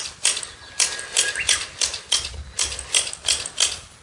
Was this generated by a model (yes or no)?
no